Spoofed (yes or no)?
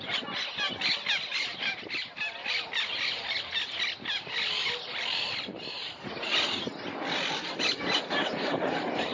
no